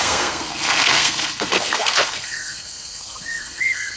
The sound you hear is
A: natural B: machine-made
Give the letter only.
B